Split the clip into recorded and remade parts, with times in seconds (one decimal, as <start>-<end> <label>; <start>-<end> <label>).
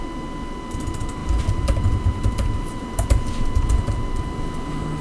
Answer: 0.0-1.2 recorded; 1.2-4.2 remade; 4.2-5.0 recorded